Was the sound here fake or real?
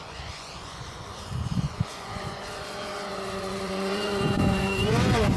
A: fake